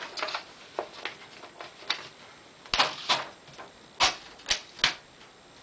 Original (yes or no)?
yes